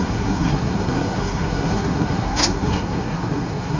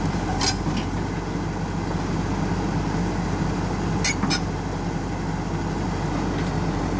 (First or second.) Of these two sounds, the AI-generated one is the first